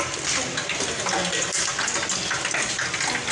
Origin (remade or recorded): recorded